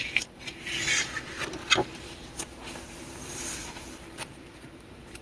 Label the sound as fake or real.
fake